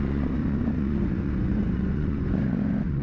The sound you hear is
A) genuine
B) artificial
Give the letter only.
B